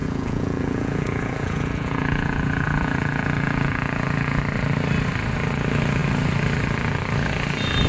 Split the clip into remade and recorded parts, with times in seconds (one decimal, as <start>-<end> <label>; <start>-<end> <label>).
0.0-4.4 remade; 4.4-7.9 recorded